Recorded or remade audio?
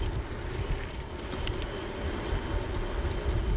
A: recorded